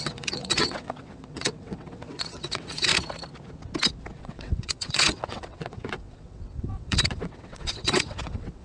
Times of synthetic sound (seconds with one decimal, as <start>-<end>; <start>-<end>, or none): 0.0-2.9; 4.2-8.6